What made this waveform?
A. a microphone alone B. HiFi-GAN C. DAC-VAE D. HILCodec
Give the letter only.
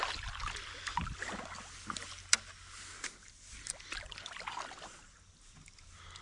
A